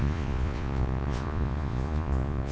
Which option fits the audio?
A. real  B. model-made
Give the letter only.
B